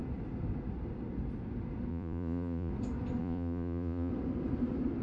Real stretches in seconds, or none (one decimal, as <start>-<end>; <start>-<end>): 0.0-1.9; 2.7-3.2; 4.1-5.0